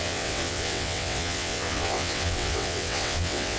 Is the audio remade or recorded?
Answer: remade